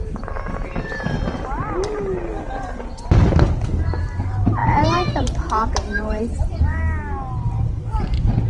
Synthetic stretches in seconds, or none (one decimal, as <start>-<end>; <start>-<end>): 4.6-6.2